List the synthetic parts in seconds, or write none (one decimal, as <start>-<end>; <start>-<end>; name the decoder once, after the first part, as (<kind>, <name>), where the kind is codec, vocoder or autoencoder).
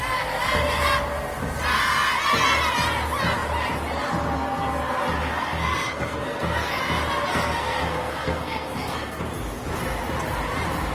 5.2-6.8 (codec, SNAC); 7.3-9.2